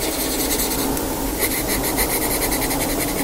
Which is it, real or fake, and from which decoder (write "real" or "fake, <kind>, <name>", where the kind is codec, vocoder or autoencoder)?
real